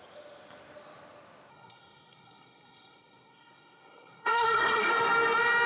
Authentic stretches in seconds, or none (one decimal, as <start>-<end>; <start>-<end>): 0.0-1.5; 4.9-5.7